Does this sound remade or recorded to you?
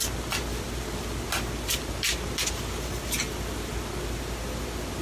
recorded